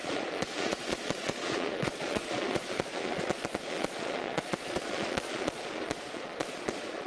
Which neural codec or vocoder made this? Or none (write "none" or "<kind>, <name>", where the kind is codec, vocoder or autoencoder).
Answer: vocoder, Vocos